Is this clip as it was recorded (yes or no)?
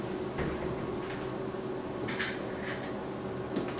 yes